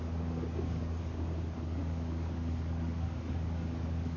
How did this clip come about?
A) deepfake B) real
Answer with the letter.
A